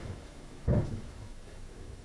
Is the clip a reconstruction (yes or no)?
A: yes